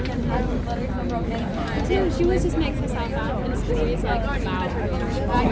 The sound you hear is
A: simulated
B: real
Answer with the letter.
B